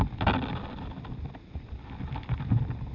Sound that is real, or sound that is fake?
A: real